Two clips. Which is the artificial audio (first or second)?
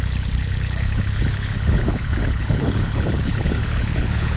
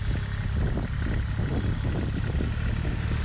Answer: first